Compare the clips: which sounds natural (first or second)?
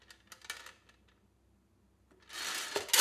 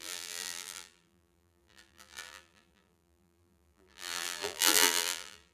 first